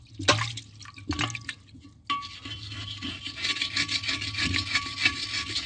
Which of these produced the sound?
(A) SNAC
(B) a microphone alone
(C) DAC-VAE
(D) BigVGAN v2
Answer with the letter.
B